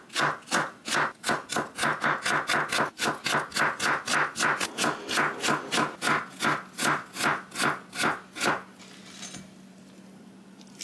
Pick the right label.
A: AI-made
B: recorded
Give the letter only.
B